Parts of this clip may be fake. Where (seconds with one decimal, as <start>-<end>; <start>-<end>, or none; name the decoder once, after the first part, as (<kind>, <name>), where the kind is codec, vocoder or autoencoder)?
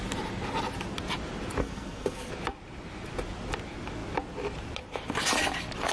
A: 1.6-2.3 (codec, SNAC)